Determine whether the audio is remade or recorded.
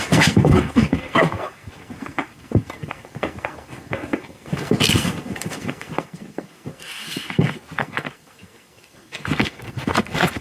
remade